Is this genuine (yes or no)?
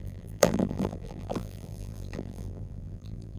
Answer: no